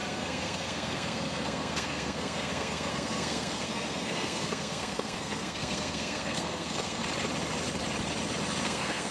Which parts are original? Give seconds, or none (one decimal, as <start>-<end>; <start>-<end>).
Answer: 7.0-8.6